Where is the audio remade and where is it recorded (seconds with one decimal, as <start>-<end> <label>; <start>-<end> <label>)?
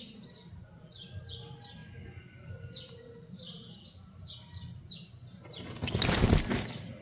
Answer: 0.0-7.0 recorded